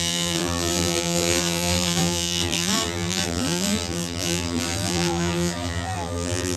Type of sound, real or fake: fake